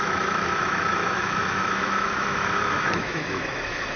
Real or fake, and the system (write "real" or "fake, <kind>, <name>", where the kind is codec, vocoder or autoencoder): fake, autoencoder, DAC-VAE